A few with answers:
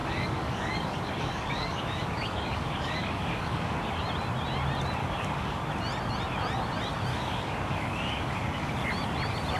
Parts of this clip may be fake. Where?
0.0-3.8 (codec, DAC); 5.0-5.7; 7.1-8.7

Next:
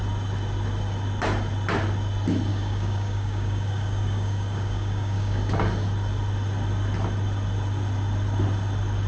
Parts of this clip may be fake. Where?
2.5-5.4 (codec, DAC)

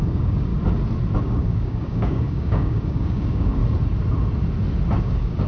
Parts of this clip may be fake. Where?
0.0-0.5 (codec, DAC); 1.2-3.6; 5.0-5.5

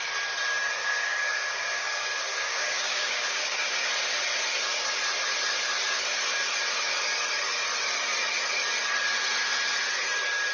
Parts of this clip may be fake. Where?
0.8-3.9 (codec, DAC)